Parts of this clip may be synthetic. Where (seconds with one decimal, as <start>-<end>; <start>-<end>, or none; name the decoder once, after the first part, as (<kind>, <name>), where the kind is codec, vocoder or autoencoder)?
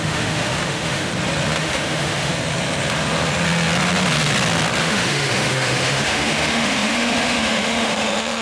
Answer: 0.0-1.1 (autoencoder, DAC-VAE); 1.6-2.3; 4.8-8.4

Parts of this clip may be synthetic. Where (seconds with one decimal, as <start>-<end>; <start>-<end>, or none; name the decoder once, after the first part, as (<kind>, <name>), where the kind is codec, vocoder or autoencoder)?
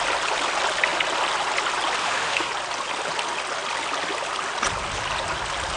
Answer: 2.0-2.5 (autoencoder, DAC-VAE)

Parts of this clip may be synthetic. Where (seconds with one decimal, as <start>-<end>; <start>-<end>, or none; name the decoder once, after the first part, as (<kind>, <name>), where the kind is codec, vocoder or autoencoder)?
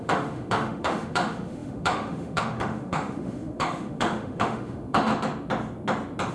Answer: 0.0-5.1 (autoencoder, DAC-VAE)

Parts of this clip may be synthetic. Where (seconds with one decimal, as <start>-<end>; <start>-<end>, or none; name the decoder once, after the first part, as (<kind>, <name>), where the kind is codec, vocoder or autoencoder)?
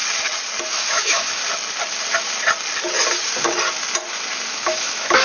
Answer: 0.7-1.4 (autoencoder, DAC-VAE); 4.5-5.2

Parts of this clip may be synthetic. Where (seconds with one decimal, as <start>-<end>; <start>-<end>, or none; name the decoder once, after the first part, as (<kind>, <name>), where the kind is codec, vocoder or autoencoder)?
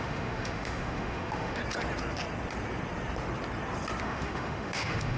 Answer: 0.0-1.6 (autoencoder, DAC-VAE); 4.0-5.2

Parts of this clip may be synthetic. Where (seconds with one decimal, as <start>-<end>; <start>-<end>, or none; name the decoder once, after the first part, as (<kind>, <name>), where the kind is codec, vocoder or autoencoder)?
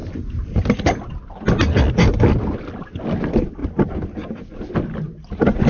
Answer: none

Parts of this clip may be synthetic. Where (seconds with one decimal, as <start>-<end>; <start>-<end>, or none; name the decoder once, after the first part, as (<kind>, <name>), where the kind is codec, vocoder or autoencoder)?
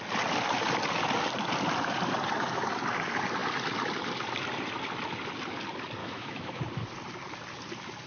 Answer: 6.0-6.6 (autoencoder, DAC-VAE)